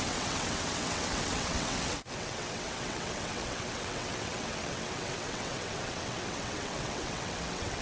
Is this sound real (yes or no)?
no